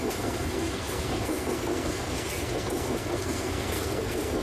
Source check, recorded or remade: remade